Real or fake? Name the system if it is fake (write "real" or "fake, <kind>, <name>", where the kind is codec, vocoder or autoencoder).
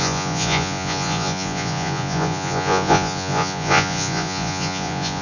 fake, vocoder, Vocos